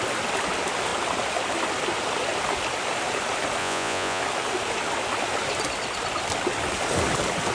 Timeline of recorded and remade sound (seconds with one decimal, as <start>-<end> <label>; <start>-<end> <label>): 0.0-3.6 recorded; 3.6-4.2 remade; 4.2-7.5 recorded